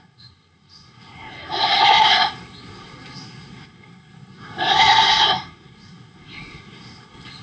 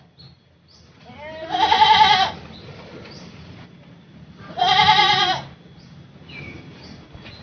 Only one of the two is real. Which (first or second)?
second